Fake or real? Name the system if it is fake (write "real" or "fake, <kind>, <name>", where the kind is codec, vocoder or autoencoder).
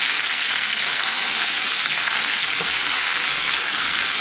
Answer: fake, codec, SNAC